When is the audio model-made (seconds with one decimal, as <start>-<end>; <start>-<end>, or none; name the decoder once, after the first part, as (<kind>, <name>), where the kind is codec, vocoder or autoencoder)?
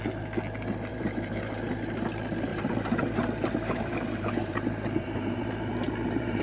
0.9-1.7 (vocoder, BigVGAN v2); 2.5-6.4